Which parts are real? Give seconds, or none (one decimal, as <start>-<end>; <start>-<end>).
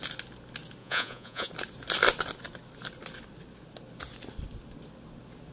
0.0-0.8; 1.5-5.5